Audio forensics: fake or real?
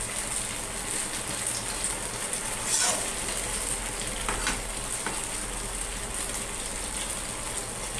real